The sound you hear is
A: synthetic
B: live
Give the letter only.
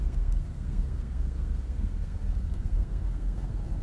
A